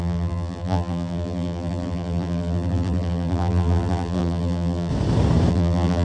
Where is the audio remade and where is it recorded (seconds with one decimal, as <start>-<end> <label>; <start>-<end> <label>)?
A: 0.0-4.9 remade; 4.9-5.5 recorded; 5.5-6.0 remade